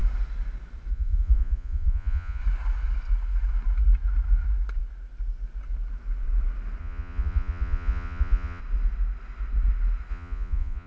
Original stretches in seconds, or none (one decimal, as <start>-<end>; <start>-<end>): 0.0-0.9; 2.4-6.8; 8.6-10.1